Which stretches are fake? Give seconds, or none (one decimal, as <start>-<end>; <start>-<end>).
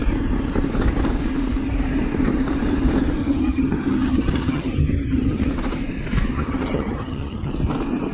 3.2-5.5; 6.3-7.5